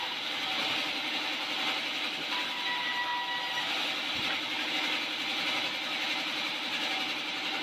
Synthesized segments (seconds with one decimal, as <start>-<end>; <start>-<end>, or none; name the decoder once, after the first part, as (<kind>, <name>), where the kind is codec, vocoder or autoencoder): none

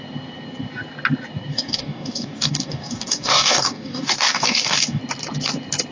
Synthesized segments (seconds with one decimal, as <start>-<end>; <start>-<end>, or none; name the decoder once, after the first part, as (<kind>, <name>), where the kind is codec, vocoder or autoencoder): 1.5-5.0 (codec, DAC)

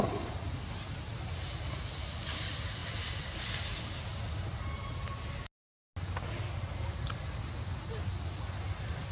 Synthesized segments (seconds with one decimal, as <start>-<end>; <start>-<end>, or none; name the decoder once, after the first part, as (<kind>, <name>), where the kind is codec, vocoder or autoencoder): none